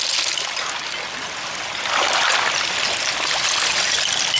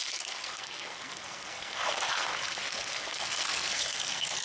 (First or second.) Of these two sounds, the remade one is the second